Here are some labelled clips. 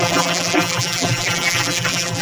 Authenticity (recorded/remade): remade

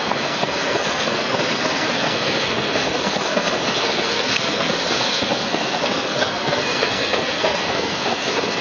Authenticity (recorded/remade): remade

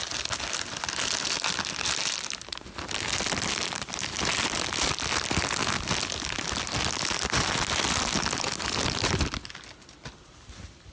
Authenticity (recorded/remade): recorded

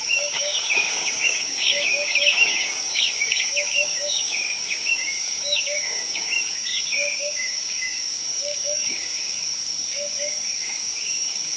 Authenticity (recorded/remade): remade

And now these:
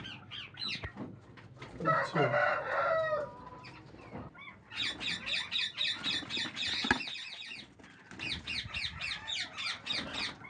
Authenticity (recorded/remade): recorded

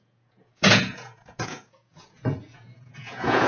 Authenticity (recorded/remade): remade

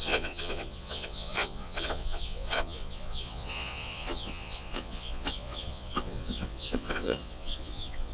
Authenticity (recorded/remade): remade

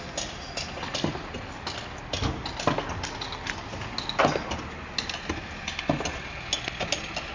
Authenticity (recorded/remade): recorded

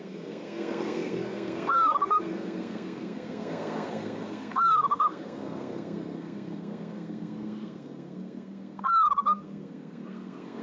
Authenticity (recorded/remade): remade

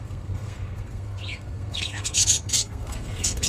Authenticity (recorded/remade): remade